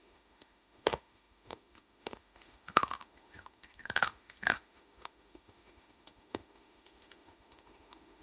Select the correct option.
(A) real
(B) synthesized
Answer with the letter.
B